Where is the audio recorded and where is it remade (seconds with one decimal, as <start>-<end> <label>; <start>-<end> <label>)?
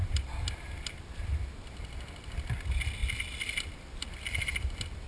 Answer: 0.0-5.1 recorded